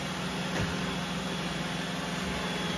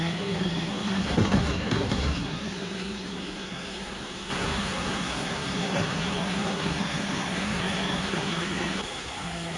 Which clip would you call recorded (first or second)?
first